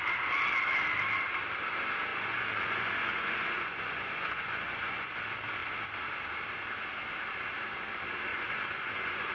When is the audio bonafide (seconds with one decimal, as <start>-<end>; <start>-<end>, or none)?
0.0-2.1; 5.1-8.3